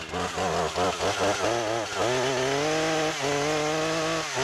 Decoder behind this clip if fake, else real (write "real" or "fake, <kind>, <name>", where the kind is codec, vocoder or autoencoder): real